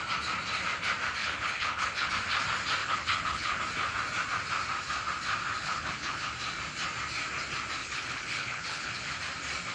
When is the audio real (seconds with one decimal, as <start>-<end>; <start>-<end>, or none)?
0.0-1.2; 2.1-2.8; 3.6-5.6; 6.3-7.8; 9.1-9.7